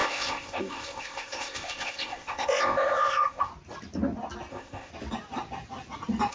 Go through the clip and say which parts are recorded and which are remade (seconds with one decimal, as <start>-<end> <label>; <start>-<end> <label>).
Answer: 0.0-3.5 remade; 3.5-4.5 recorded; 4.5-4.9 remade; 4.9-6.3 recorded